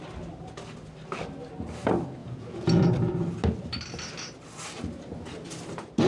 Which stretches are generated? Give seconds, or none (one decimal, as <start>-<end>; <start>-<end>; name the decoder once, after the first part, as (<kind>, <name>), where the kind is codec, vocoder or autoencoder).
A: 2.2-2.8 (vocoder, Vocos)